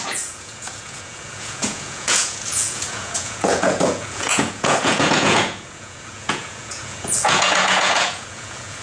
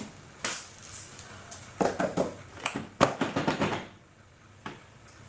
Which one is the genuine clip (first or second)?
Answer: second